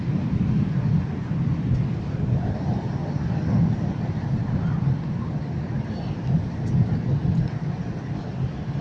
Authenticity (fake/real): real